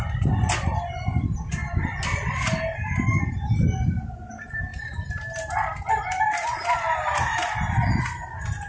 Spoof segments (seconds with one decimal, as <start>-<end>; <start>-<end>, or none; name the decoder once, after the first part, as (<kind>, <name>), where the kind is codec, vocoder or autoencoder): none